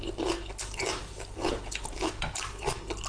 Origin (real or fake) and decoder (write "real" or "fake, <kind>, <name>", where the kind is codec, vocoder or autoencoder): real